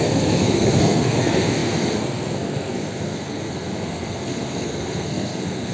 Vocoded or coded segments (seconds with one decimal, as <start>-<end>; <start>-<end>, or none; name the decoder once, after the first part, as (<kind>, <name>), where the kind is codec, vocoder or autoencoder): 0.0-5.7 (codec, SNAC)